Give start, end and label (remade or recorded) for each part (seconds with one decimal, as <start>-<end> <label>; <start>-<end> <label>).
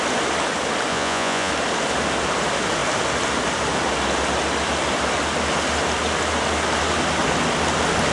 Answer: 0.0-0.9 recorded; 0.9-1.5 remade; 1.5-8.1 recorded